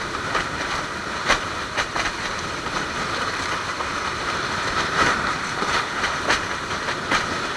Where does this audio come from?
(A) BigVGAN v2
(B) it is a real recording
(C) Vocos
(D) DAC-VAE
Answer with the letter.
A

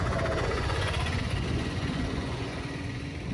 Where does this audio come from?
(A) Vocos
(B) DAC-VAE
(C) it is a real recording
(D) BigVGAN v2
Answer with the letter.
A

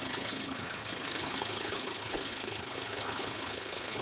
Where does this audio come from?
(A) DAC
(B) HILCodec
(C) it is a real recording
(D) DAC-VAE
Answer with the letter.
B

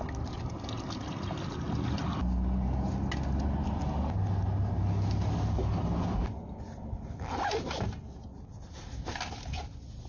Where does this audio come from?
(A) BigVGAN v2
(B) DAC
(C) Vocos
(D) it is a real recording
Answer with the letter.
D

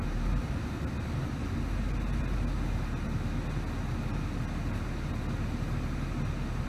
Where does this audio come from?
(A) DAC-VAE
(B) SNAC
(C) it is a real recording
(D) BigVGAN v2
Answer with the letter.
C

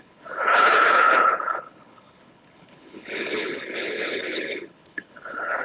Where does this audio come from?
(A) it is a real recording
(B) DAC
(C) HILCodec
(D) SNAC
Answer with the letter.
C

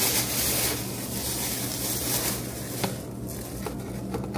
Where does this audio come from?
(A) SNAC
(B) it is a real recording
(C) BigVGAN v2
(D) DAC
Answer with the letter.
B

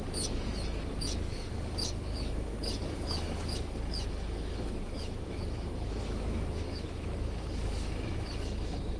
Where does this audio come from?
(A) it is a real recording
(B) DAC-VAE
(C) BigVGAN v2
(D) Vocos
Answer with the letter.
B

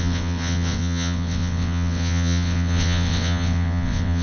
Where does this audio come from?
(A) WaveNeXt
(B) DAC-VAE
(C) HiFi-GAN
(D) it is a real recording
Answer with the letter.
A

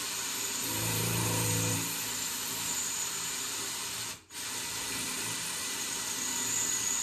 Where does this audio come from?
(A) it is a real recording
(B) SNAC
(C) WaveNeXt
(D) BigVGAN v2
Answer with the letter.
D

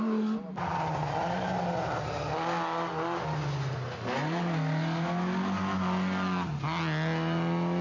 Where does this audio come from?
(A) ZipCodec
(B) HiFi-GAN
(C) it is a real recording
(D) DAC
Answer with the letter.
C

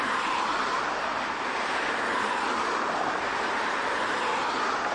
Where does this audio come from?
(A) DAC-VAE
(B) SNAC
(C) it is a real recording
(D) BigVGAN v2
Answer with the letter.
C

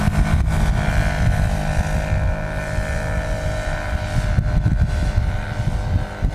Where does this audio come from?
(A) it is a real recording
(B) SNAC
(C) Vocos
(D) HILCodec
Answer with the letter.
A